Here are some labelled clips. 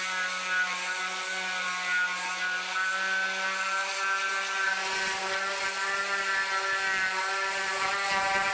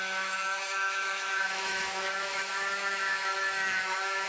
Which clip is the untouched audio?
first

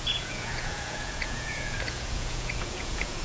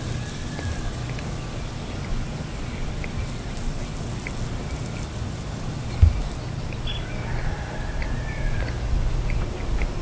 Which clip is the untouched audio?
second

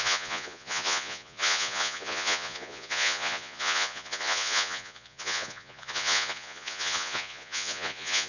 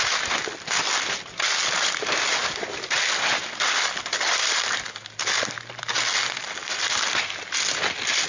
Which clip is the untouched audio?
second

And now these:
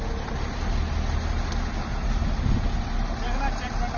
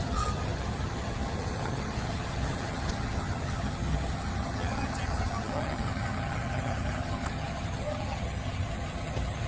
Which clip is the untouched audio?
first